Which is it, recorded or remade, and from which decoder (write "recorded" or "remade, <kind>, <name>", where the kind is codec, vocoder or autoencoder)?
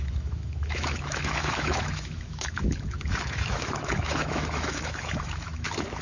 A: remade, autoencoder, DAC-VAE